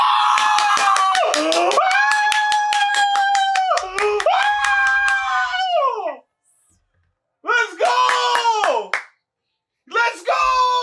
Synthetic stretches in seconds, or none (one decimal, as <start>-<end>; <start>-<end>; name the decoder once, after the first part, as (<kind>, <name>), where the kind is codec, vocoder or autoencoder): 2.9-5.8 (autoencoder, DAC-VAE)